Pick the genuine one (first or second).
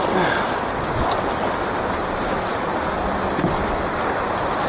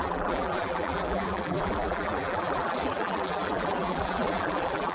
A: first